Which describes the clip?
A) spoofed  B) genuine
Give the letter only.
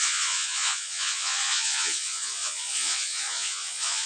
A